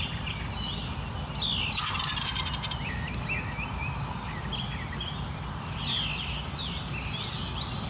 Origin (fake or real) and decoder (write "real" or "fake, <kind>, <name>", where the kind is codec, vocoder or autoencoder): real